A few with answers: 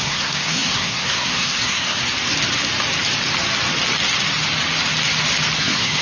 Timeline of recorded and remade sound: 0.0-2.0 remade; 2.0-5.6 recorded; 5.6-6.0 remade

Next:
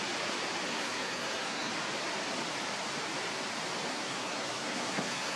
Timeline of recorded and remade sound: 0.0-0.7 recorded; 0.7-1.7 remade; 1.7-3.9 recorded; 3.9-5.4 remade

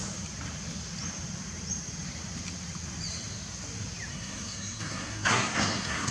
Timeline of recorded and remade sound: 0.0-4.1 recorded; 4.1-6.1 remade

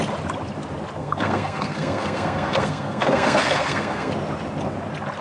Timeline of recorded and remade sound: 0.0-1.0 recorded; 1.0-4.1 remade; 4.1-5.2 recorded

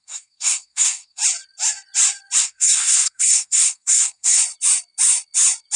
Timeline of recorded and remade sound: 0.0-1.2 remade; 1.2-2.4 recorded; 2.4-4.4 remade; 4.4-5.8 recorded

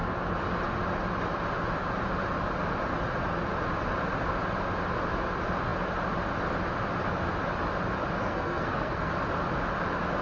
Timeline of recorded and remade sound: 0.0-8.2 recorded; 8.2-9.1 remade; 9.1-10.2 recorded

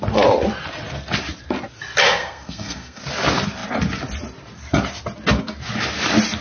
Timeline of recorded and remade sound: 0.0-2.2 recorded; 2.2-3.0 remade; 3.0-6.4 recorded

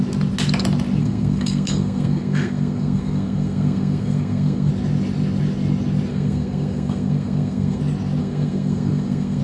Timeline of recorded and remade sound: 0.0-1.0 recorded; 1.0-4.7 remade; 4.7-6.1 recorded; 6.1-7.8 remade; 7.8-8.2 recorded; 8.2-9.4 remade